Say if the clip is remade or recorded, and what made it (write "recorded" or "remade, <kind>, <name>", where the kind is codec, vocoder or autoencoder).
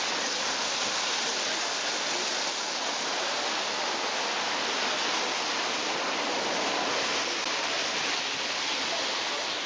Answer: recorded